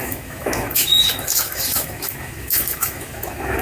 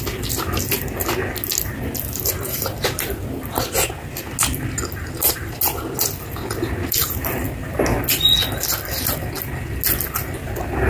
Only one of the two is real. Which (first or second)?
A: second